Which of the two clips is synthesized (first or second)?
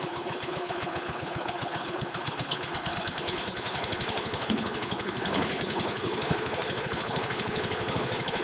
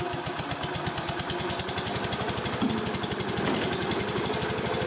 first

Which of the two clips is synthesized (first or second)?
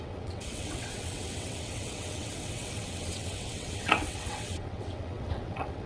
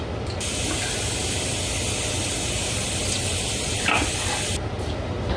first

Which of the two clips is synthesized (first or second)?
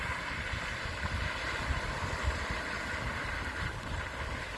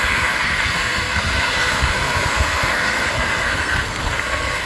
second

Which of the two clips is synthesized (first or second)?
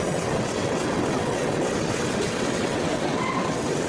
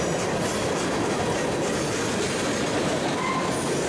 first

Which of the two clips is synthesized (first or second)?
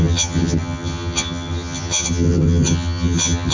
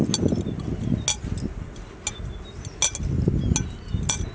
first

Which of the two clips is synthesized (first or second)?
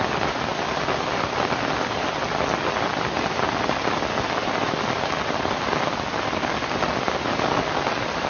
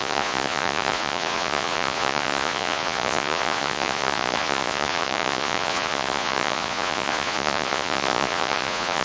second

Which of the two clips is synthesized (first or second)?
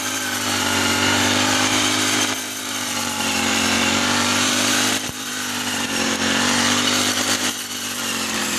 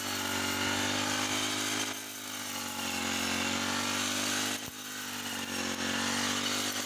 first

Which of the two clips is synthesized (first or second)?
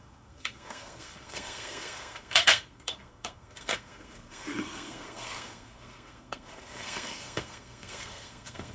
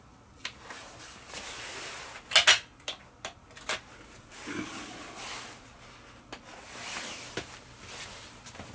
first